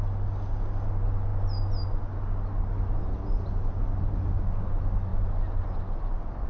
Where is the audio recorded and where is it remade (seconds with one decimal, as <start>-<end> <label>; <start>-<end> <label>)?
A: 0.0-6.5 recorded